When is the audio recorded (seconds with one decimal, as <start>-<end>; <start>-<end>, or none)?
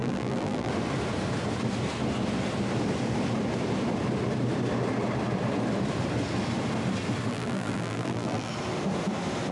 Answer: 0.7-7.3; 8.5-9.5